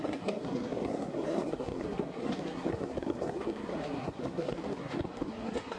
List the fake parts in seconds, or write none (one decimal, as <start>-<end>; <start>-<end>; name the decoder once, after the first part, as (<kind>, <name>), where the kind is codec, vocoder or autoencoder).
0.0-5.8 (codec, SNAC)